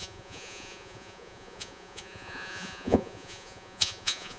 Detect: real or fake fake